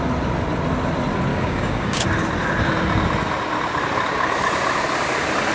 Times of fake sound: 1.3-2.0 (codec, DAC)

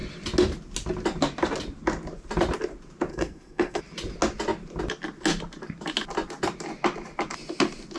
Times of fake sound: 3.1-3.8 (codec, SNAC)

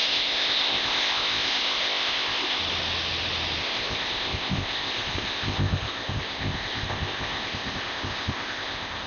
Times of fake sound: 0.0-2.6 (codec, ZipCodec); 3.6-9.1

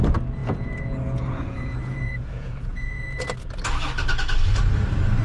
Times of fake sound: 0.4-3.2 (vocoder, Vocos)

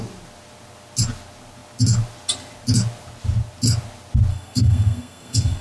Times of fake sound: 4.3-5.6 (codec, SNAC)

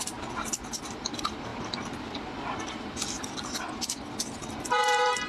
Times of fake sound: none